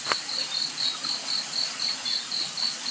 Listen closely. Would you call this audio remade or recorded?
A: remade